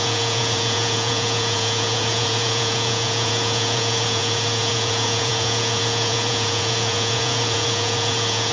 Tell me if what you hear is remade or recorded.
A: remade